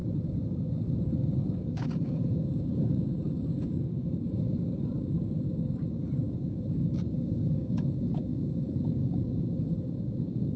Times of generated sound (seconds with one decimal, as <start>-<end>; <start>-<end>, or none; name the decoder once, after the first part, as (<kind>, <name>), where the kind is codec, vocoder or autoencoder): 0.0-10.6 (codec, DAC)